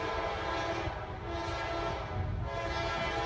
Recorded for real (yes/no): yes